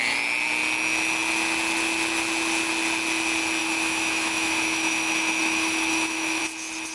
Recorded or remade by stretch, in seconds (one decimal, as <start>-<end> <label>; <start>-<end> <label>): 0.0-3.6 recorded; 3.6-6.4 remade; 6.4-6.9 recorded